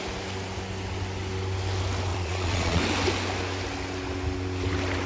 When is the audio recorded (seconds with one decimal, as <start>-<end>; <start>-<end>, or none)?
0.0-2.1; 2.8-5.1